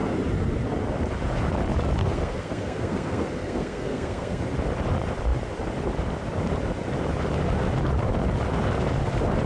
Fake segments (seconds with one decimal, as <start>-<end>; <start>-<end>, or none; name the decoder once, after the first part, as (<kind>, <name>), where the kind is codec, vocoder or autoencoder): 2.0-4.4 (codec, SNAC)